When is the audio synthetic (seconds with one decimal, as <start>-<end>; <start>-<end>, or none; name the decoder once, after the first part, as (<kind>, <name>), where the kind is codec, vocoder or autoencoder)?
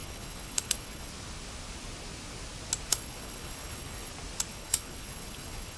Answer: 0.0-1.1 (codec, HILCodec); 2.9-4.1; 4.5-5.8